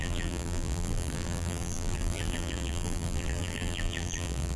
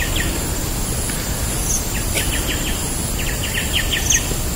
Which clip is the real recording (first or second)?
second